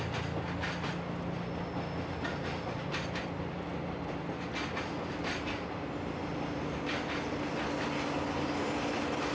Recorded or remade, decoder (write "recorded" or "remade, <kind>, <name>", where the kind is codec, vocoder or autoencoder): recorded